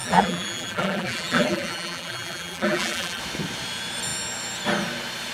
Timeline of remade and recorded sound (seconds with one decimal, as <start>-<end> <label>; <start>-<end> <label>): 0.0-3.2 remade; 3.2-5.3 recorded